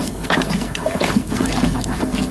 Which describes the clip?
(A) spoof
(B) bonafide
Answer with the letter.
A